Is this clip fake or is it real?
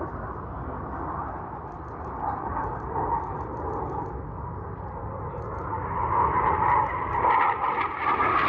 real